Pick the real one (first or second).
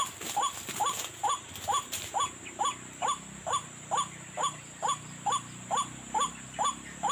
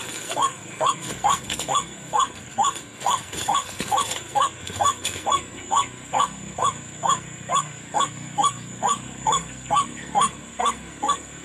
first